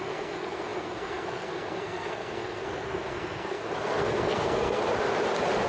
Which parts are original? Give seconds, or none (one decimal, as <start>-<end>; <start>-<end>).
4.8-5.7